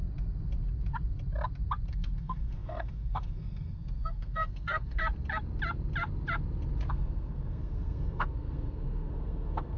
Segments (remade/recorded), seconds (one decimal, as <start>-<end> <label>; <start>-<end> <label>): 0.0-1.9 recorded; 1.9-5.0 remade; 5.0-6.9 recorded; 6.9-9.8 remade

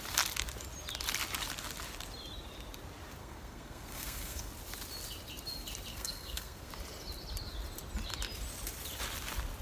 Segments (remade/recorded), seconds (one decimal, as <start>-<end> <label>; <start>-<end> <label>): 0.0-3.2 recorded; 3.2-4.5 remade; 4.5-5.9 recorded; 5.9-6.7 remade; 6.7-9.6 recorded

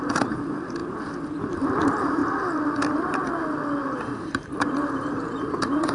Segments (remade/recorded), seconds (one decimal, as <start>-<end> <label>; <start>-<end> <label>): 0.0-0.8 remade; 0.8-1.4 recorded; 1.4-2.2 remade; 2.2-3.8 recorded; 3.8-5.9 remade

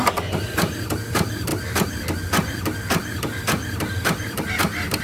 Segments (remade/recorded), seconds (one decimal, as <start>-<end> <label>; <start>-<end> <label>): 0.0-5.0 remade

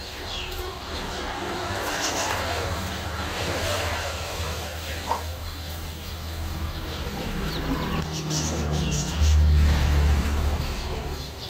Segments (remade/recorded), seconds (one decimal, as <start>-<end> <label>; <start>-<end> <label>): 0.0-7.5 remade; 7.5-8.0 recorded; 8.0-11.5 remade

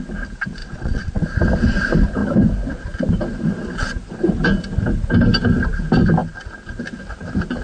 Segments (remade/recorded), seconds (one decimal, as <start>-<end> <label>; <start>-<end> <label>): 0.0-0.6 recorded; 0.6-1.2 remade; 1.2-7.6 recorded

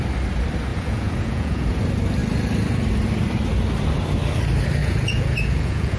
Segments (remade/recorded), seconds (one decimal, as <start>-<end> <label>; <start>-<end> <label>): 0.0-0.7 recorded; 0.7-1.8 remade; 1.8-4.8 recorded; 4.8-6.0 remade